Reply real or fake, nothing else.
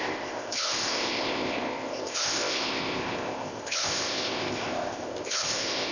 fake